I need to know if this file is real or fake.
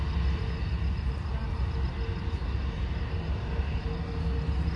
real